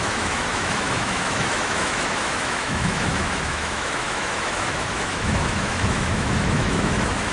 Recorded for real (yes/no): no